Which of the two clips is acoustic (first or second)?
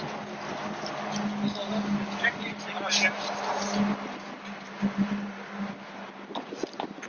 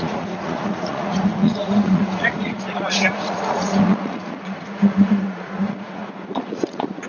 first